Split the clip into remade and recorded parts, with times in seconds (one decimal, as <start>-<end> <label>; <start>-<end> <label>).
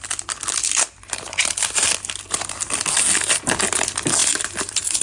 0.0-4.2 recorded; 4.2-5.0 remade